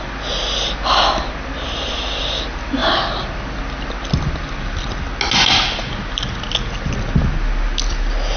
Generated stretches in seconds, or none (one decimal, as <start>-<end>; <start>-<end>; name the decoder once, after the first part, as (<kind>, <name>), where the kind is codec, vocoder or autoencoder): none